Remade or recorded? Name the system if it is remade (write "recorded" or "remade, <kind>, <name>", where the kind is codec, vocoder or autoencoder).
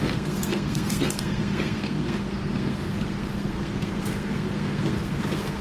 remade, codec, SNAC